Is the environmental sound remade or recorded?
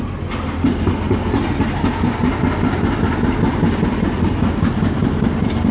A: recorded